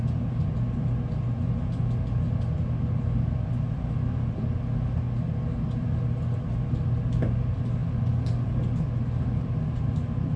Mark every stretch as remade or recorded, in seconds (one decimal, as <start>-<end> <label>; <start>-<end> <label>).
0.0-10.4 recorded